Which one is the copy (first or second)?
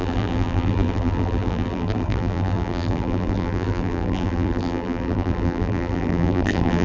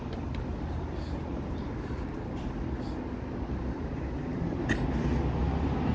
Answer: first